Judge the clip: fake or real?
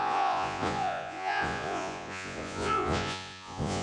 fake